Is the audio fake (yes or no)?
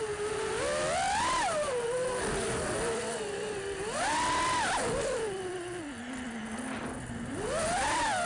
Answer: no